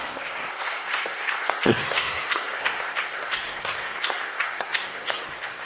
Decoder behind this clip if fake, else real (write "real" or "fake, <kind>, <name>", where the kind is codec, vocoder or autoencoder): fake, codec, SNAC